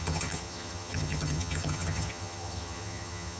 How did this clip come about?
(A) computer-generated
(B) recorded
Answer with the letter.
A